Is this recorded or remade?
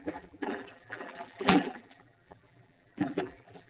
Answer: remade